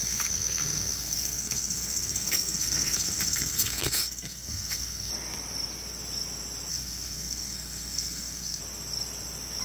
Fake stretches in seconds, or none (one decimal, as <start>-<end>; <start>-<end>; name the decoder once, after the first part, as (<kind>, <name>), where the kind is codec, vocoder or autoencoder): 0.0-5.1 (codec, SNAC); 6.7-8.6